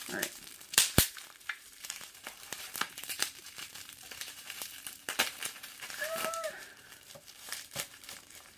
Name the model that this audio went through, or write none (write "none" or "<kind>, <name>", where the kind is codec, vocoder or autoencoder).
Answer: vocoder, BigVGAN v2